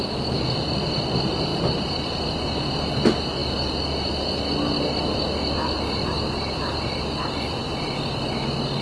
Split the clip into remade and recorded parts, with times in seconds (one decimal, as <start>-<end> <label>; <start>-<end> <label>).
0.0-8.8 recorded